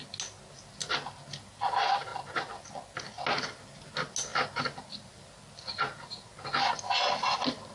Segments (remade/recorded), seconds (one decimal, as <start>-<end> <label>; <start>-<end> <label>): 0.0-7.7 recorded